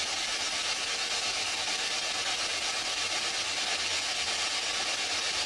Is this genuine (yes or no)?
yes